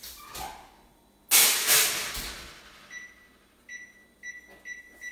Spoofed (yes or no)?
no